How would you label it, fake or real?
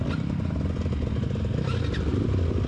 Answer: real